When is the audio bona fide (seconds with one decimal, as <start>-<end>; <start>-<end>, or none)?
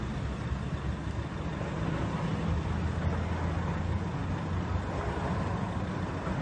0.0-6.4